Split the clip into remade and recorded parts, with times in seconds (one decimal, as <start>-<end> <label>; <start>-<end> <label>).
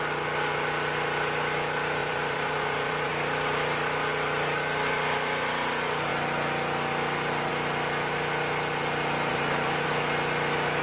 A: 0.0-2.0 recorded; 2.0-3.1 remade; 3.1-9.3 recorded; 9.3-9.9 remade; 9.9-10.8 recorded